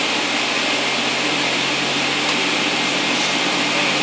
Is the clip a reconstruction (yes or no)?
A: no